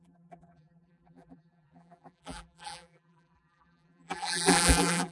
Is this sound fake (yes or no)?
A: yes